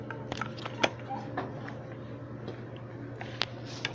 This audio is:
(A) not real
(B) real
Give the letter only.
B